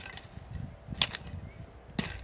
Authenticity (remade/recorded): recorded